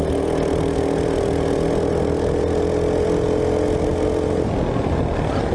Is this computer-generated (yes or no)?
no